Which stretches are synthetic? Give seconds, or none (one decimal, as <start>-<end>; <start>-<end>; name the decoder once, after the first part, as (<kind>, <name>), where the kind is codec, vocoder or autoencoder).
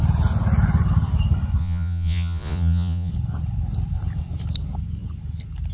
1.6-3.1 (vocoder, Vocos)